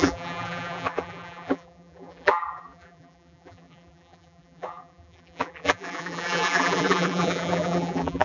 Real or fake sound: fake